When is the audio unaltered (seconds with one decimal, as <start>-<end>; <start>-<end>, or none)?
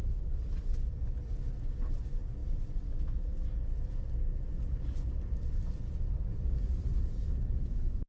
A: 0.0-6.3; 7.1-8.1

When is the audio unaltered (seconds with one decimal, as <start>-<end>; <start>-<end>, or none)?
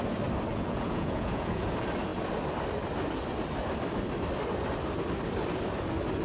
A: 0.0-0.5; 1.6-6.2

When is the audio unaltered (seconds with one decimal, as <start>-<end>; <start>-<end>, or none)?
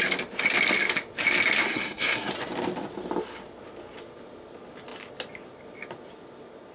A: 0.0-1.6; 2.3-6.7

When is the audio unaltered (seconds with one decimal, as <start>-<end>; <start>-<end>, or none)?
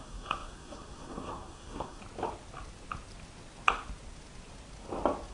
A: 2.0-5.3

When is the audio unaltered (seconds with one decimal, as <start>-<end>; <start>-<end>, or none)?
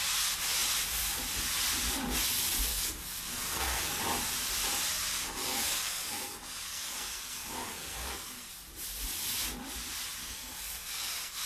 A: 0.0-2.7; 4.0-5.1; 8.5-10.2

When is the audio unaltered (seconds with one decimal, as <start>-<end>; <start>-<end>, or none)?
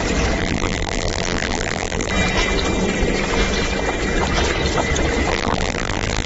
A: 0.0-0.4; 2.1-5.3